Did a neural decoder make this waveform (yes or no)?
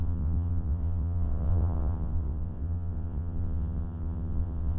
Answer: yes